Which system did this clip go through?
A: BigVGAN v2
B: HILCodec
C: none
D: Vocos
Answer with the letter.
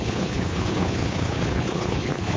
B